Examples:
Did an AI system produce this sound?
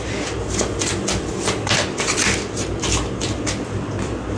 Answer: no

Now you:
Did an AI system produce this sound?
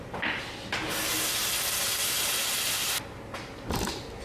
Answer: no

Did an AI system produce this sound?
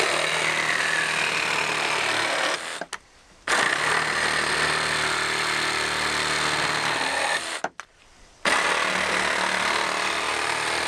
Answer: no